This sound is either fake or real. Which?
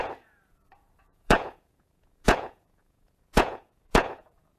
fake